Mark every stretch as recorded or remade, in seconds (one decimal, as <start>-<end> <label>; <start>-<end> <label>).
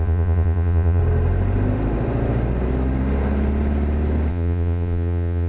0.0-1.0 remade; 1.0-4.3 recorded; 4.3-5.5 remade